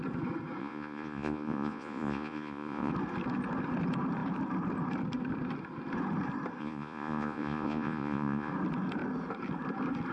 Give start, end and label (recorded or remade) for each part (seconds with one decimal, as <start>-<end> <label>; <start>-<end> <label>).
0.0-0.6 recorded; 0.6-2.9 remade; 2.9-6.6 recorded; 6.6-8.5 remade; 8.5-10.1 recorded

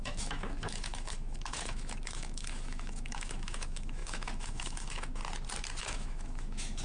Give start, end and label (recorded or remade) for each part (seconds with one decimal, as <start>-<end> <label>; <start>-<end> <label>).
0.0-5.2 remade; 5.2-5.8 recorded; 5.8-6.8 remade

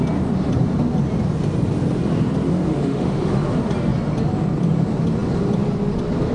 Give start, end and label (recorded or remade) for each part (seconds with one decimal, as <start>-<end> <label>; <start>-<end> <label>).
0.0-2.7 recorded; 2.7-3.3 remade; 3.3-6.3 recorded

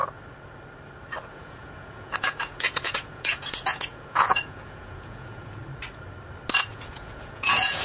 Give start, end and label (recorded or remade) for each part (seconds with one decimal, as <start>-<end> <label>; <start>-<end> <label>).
0.0-1.3 recorded; 1.3-5.6 remade; 5.6-6.7 recorded; 6.7-7.8 remade

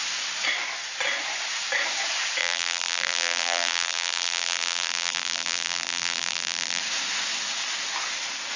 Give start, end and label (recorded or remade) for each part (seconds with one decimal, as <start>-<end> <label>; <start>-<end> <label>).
0.0-2.4 recorded; 2.4-6.8 remade; 6.8-8.6 recorded